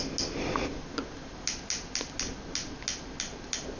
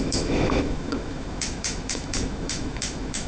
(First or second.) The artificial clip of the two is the second